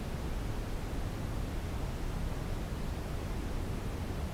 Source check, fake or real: real